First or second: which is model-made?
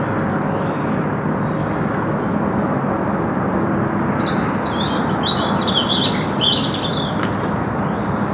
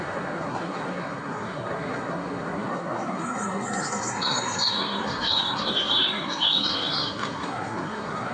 second